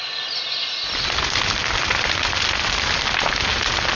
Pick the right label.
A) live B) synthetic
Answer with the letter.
A